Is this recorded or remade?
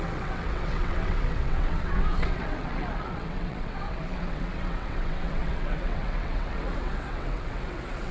remade